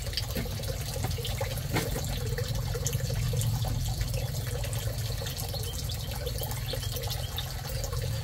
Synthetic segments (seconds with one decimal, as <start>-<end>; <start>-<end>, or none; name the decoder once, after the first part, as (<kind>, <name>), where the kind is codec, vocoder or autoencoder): none